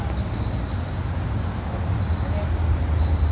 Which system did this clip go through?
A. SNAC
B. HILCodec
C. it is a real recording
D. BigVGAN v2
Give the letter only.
C